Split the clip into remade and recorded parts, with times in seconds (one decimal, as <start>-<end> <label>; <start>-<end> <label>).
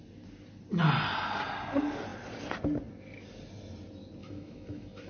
0.0-4.2 recorded; 4.2-5.1 remade